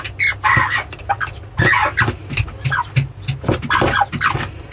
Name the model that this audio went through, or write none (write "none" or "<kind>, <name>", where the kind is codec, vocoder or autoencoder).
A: none